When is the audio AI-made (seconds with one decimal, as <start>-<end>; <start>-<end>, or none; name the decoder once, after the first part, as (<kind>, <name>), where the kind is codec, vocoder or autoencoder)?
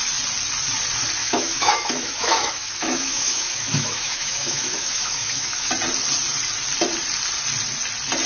1.2-5.7 (autoencoder, DAC-VAE)